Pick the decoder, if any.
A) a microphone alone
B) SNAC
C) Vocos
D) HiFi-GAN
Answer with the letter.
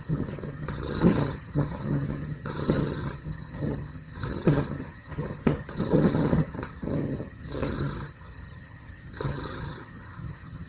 D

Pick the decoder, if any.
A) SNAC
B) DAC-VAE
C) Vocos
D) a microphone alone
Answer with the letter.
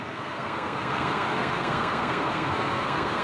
A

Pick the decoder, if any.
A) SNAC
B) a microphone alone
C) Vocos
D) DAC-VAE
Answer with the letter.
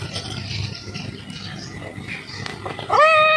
B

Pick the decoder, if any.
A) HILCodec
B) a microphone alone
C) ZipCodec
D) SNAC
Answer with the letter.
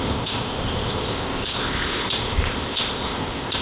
C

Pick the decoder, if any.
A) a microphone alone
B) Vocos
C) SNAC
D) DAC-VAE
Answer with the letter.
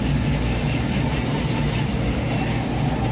A